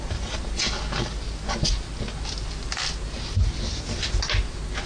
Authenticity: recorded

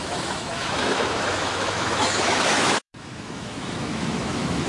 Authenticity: remade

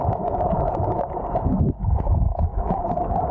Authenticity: remade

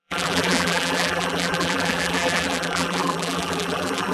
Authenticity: remade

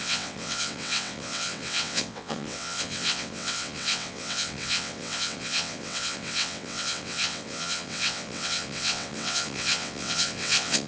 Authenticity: remade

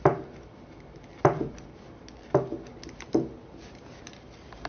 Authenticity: recorded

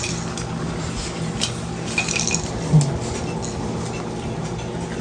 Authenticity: recorded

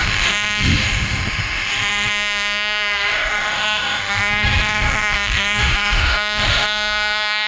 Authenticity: remade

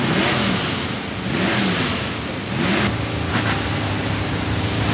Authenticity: recorded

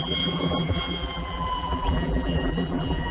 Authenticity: remade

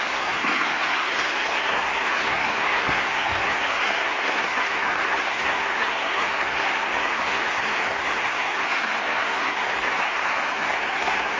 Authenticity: remade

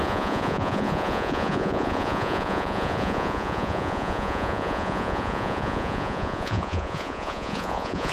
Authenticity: remade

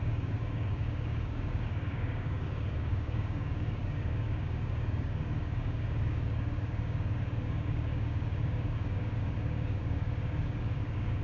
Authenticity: remade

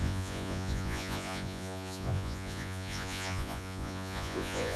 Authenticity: remade